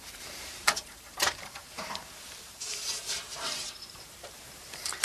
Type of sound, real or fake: fake